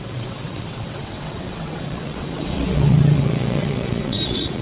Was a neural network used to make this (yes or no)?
yes